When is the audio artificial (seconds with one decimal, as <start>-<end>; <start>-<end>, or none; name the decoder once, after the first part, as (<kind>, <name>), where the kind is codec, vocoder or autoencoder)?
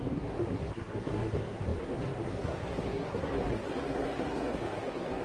0.0-5.2 (codec, SNAC)